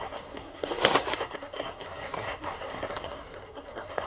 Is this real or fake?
fake